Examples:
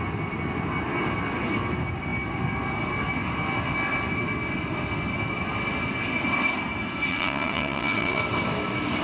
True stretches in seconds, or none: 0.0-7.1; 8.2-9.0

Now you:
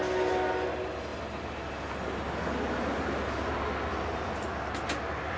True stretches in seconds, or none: 0.0-5.4

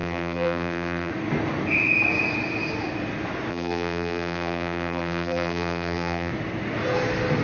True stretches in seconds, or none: 1.1-3.5; 6.3-7.4

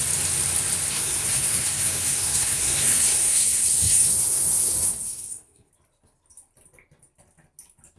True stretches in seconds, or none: 0.0-0.9; 5.7-8.0

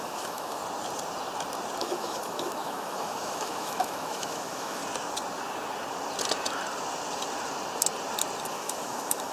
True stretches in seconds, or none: 0.6-1.8; 4.8-8.5